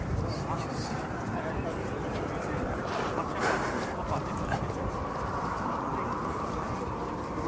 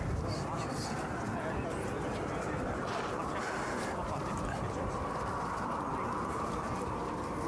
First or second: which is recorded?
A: second